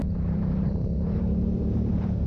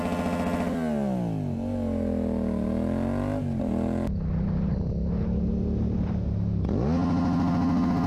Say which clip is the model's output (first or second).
first